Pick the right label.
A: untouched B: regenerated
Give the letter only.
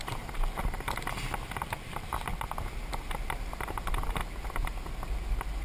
A